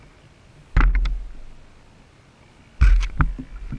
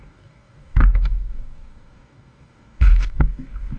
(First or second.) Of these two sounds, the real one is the first